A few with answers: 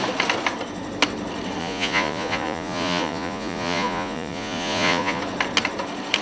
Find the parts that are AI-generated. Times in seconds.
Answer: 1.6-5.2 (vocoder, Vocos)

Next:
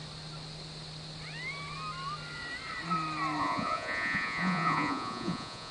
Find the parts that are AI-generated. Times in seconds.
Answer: 3.4-5.7 (vocoder, Vocos)

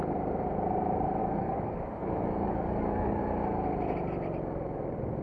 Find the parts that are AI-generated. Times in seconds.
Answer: 1.2-3.2 (codec, DAC)

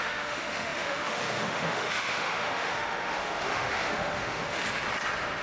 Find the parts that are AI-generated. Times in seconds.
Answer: 0.0-4.6 (autoencoder, DAC-VAE)

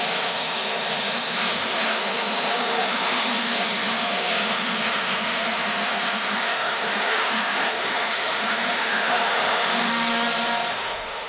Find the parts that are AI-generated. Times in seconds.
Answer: 0.0-9.9 (autoencoder, DAC-VAE); 10.7-11.3

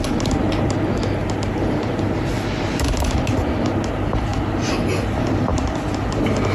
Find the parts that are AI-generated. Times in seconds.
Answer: none